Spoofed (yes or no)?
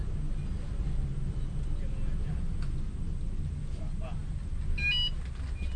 no